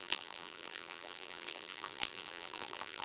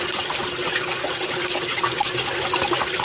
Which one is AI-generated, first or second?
first